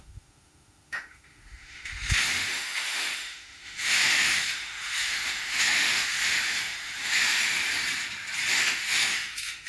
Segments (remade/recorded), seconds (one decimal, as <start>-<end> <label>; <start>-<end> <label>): 0.0-7.6 remade; 7.6-8.5 recorded; 8.5-9.7 remade